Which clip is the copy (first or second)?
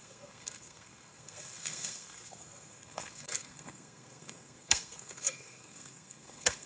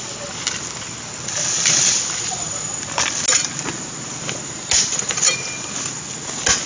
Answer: first